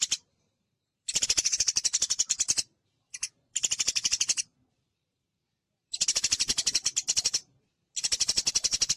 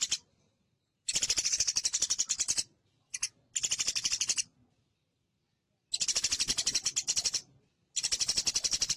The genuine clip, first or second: second